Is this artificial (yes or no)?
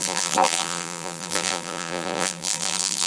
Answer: yes